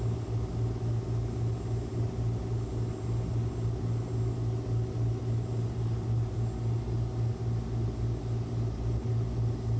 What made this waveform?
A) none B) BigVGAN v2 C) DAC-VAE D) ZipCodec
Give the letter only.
A